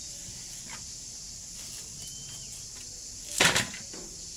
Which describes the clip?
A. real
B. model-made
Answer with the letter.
A